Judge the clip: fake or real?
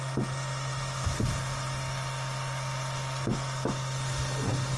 real